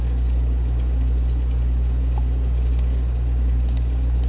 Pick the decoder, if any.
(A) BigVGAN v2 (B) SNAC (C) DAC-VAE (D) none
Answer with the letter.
D